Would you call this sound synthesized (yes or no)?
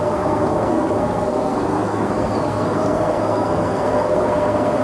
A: yes